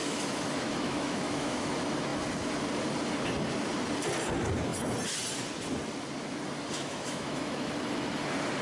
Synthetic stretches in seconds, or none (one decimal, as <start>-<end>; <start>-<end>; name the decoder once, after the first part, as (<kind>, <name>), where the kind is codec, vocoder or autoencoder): 0.0-1.7 (autoencoder, DAC-VAE); 6.8-7.7